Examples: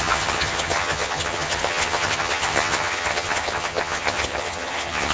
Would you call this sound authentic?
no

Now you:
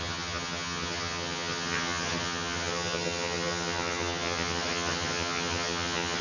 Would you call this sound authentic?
no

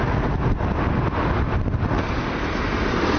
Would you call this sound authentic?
yes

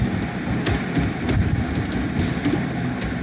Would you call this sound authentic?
yes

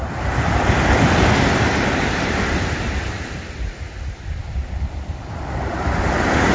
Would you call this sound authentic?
yes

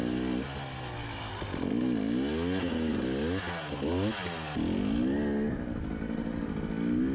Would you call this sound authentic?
yes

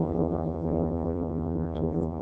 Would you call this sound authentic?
no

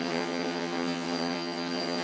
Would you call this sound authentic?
no